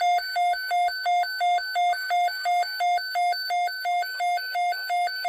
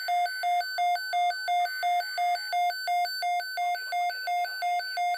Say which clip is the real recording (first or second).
second